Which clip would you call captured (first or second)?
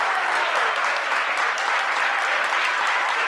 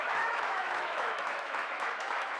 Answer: first